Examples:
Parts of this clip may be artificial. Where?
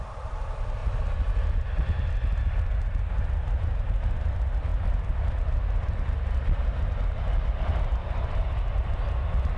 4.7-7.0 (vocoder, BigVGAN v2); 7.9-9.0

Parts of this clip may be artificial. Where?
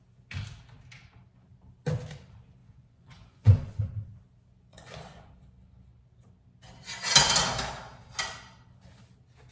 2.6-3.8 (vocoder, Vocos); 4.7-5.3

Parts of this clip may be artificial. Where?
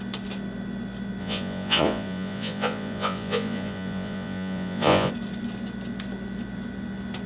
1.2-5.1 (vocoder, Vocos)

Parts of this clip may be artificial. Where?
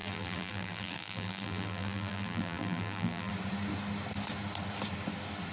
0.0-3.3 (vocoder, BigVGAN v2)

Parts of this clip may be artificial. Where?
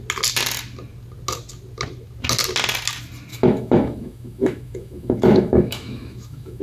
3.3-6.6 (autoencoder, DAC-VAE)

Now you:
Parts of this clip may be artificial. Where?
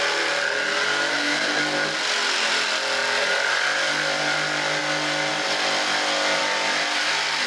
1.1-1.6 (codec, SNAC)